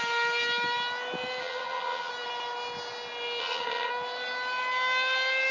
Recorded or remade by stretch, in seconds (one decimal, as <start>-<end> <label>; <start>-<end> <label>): 0.0-1.4 recorded; 1.4-2.1 remade; 2.1-3.4 recorded; 3.4-3.9 remade; 3.9-5.5 recorded